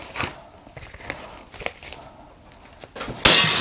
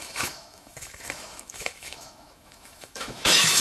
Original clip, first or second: first